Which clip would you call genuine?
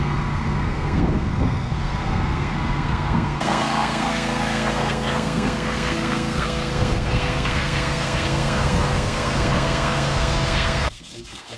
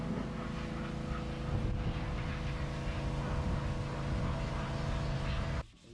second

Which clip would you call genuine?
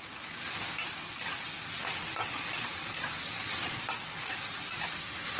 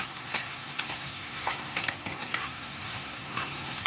first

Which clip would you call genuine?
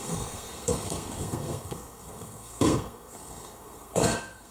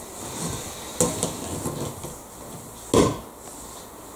second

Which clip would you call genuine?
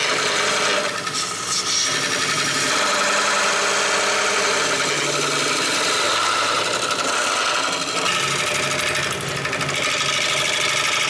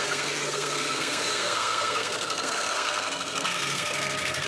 first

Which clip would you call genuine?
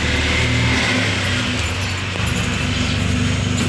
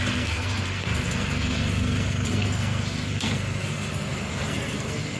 first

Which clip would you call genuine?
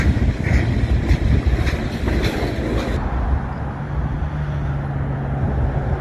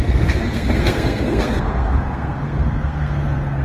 first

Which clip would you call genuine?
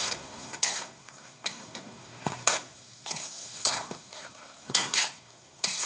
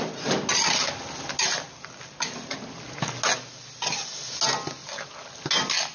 second